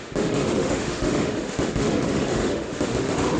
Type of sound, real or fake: fake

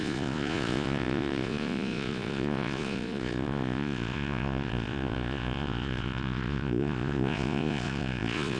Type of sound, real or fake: fake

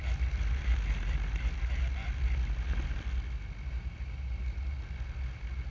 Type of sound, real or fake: real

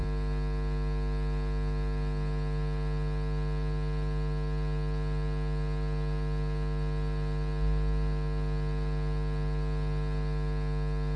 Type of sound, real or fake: real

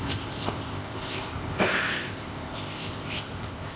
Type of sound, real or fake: fake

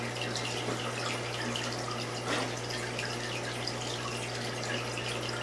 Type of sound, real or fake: real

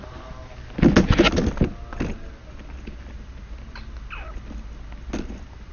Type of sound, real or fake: real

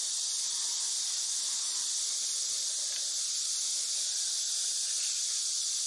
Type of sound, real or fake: real